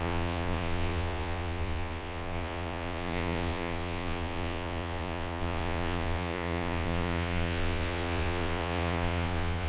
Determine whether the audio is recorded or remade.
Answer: remade